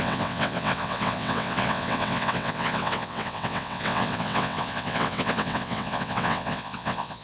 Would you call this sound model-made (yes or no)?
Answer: yes